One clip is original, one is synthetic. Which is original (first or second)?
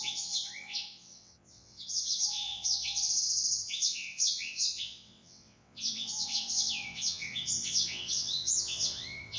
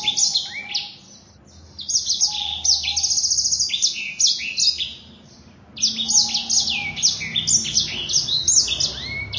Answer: second